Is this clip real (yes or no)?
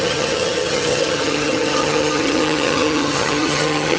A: no